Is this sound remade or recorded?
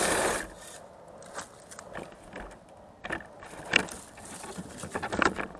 recorded